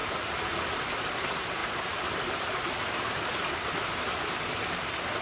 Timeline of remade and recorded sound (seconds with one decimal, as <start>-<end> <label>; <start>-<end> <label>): 0.0-5.2 recorded